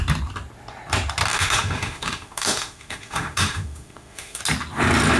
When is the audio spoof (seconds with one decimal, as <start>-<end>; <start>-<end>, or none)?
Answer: 1.3-4.4